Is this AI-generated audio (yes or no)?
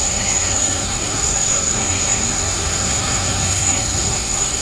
yes